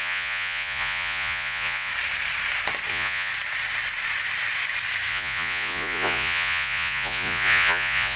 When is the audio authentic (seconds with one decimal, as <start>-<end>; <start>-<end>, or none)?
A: 1.9-2.9; 3.3-5.1